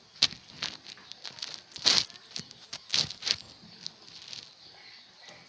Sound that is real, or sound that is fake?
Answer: real